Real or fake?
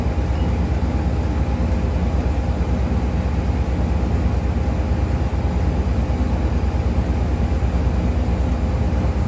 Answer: real